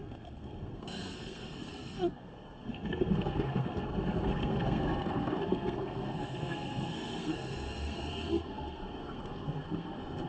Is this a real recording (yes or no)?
no